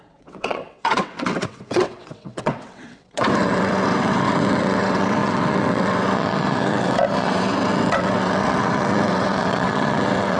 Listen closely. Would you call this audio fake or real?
fake